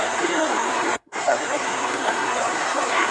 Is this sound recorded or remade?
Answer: remade